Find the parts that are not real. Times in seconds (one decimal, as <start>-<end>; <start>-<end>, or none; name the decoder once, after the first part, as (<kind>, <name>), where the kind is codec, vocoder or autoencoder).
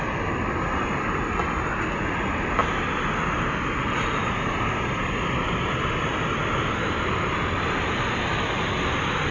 none